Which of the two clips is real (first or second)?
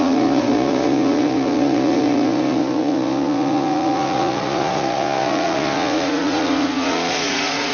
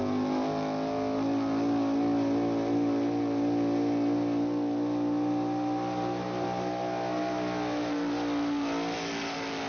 second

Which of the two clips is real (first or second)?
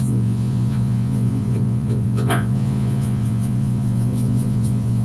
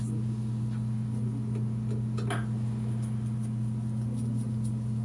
second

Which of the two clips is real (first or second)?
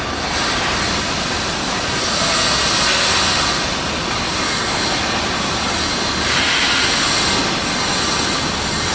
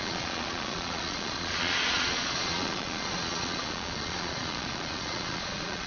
first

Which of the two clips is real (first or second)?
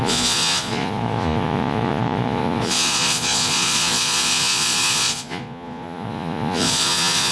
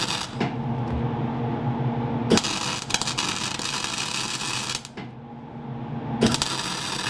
second